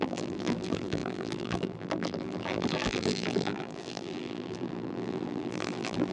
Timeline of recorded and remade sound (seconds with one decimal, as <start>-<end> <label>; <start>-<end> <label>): 0.0-6.1 remade